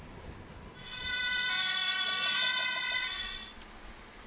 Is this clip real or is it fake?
real